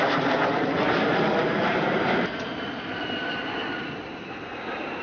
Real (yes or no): no